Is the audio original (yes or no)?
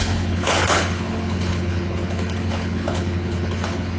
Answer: no